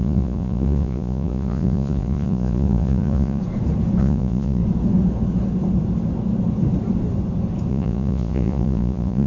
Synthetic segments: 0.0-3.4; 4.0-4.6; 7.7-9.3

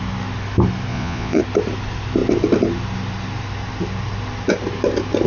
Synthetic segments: 0.9-1.4